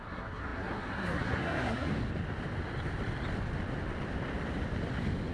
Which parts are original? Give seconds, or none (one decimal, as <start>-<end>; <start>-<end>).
1.9-5.3

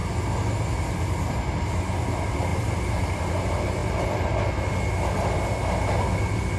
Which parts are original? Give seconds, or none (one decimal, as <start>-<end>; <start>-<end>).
0.0-6.6

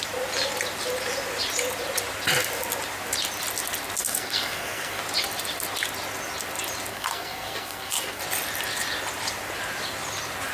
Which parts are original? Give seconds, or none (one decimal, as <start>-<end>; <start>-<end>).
0.0-4.0; 5.0-6.9; 8.2-10.5

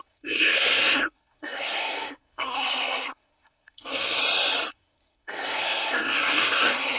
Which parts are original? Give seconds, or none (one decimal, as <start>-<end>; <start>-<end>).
4.2-4.7